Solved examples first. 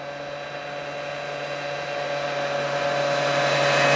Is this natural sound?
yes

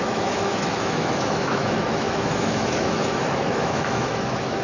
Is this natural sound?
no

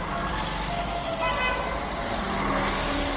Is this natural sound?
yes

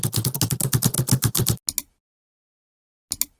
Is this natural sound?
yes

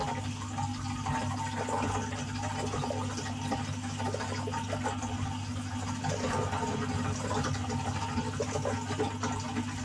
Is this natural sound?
yes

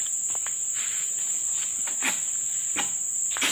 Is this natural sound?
yes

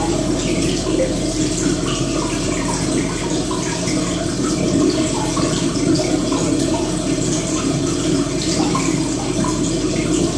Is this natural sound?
yes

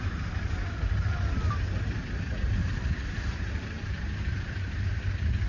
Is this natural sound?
no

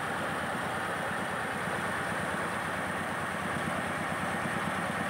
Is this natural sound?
yes